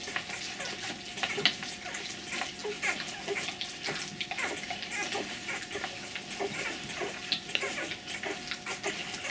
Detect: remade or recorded recorded